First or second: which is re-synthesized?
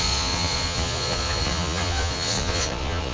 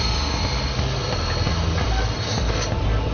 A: first